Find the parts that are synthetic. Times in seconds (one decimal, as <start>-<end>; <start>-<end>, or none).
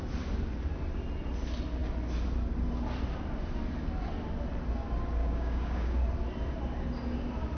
5.2-6.0